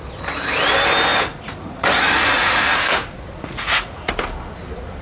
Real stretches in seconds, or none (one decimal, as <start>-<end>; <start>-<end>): 0.0-1.1; 4.1-5.0